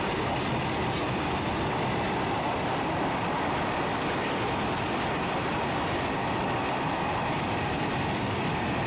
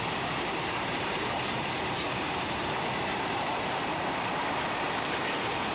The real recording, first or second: first